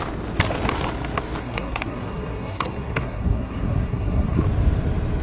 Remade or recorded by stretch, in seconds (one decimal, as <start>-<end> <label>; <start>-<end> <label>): 0.0-1.4 recorded; 1.4-4.4 remade; 4.4-5.2 recorded